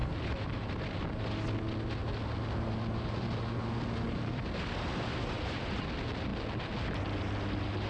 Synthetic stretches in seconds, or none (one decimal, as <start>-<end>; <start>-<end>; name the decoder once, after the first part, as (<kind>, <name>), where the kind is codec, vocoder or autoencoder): 0.0-1.0 (vocoder, BigVGAN v2)